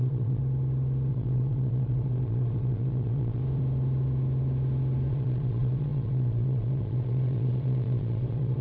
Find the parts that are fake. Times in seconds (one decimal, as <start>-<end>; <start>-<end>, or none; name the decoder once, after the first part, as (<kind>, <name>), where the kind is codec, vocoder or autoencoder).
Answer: 0.0-0.4 (vocoder, Vocos); 1.1-3.4; 5.1-8.6